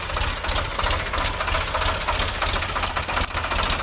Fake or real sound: real